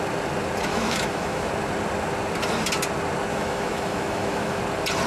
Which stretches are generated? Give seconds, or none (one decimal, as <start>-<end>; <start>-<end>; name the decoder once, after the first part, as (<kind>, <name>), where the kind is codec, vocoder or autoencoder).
0.7-1.5 (autoencoder, DAC-VAE); 3.3-4.6